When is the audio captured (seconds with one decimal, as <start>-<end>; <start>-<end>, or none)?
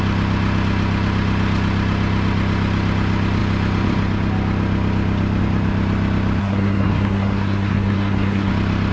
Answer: 0.0-6.4; 8.5-8.9